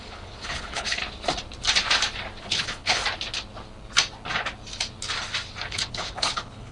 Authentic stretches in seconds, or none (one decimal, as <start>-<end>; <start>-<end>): 1.0-2.4; 3.0-5.7